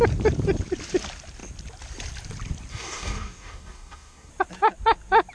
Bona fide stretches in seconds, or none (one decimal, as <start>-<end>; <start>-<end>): 0.0-2.7; 4.3-5.3